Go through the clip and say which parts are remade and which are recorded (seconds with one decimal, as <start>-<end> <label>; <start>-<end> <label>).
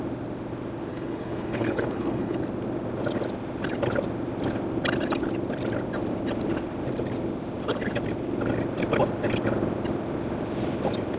0.0-0.9 recorded; 0.9-2.4 remade; 2.4-11.2 recorded